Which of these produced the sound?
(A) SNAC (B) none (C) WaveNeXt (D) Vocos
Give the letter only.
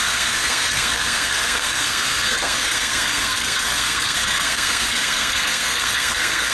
A